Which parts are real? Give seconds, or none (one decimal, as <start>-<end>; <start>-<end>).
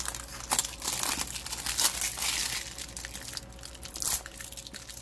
0.0-5.0